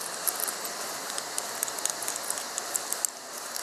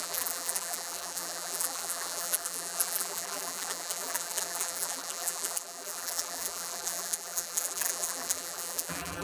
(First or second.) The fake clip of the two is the second